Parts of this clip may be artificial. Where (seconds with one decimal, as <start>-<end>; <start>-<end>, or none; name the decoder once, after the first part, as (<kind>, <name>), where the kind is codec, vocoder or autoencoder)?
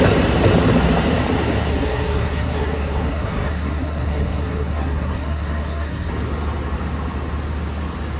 1.7-6.1 (codec, SNAC)